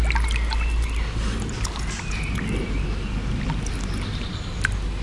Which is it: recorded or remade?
recorded